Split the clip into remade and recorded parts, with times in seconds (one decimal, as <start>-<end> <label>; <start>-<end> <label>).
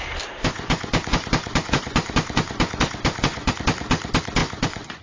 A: 0.0-0.5 recorded; 0.5-3.5 remade; 3.5-4.4 recorded; 4.4-5.0 remade